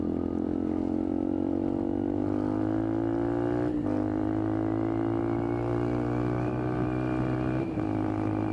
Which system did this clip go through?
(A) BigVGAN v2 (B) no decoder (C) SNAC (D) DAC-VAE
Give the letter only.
B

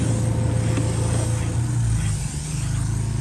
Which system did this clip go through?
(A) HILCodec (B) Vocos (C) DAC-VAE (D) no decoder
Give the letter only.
D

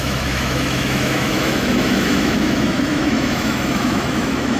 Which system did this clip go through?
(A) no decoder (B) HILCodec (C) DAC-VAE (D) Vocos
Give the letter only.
C